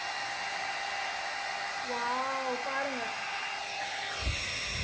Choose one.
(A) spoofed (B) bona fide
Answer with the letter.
B